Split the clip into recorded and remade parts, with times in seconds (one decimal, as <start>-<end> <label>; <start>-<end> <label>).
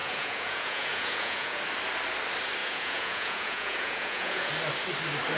0.0-1.6 remade; 1.6-2.6 recorded; 2.6-4.5 remade; 4.5-5.4 recorded